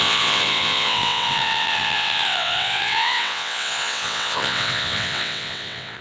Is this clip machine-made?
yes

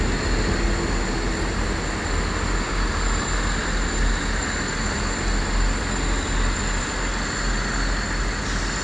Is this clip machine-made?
no